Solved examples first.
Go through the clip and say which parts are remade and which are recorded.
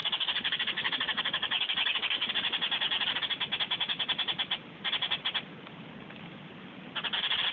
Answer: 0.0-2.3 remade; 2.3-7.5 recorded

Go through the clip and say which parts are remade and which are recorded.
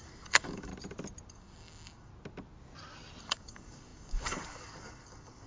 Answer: 0.0-0.7 remade; 0.7-1.3 recorded; 1.3-2.1 remade; 2.1-3.2 recorded; 3.2-5.5 remade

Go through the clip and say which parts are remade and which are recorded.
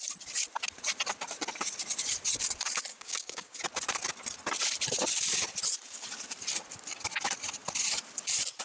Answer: 0.0-2.9 recorded; 2.9-3.6 remade; 3.6-8.6 recorded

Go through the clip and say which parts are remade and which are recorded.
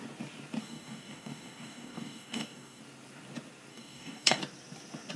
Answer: 0.0-0.6 recorded; 0.6-2.8 remade; 2.8-3.7 recorded; 3.7-4.4 remade; 4.4-5.2 recorded